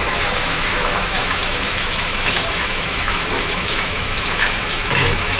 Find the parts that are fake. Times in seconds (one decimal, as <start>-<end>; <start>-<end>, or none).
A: 0.0-5.4